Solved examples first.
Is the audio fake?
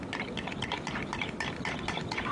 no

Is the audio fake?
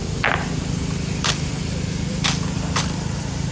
yes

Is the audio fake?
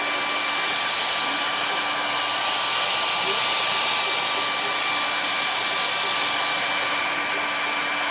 no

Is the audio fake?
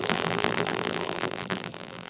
yes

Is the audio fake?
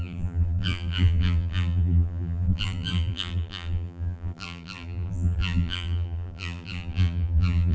yes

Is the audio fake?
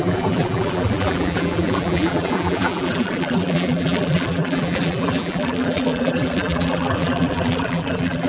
yes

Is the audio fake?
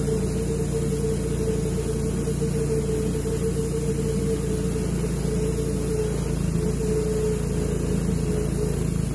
no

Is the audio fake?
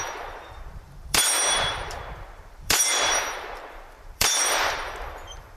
yes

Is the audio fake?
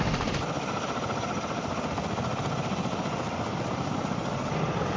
no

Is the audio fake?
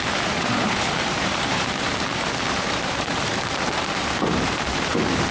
yes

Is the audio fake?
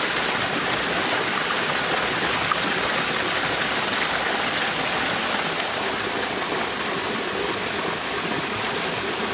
no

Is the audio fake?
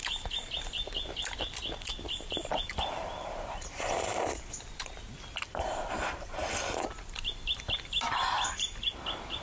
yes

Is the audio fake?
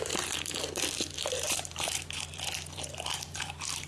yes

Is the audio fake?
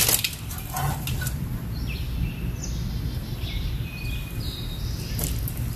no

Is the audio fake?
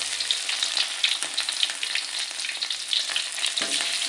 no